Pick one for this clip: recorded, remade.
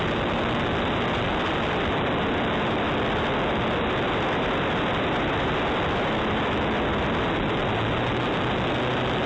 recorded